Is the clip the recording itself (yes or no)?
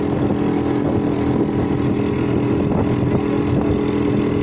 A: yes